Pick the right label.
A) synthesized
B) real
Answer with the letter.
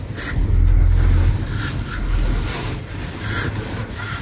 B